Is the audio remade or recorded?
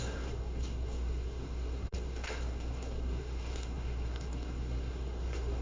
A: remade